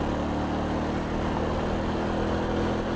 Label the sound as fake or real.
real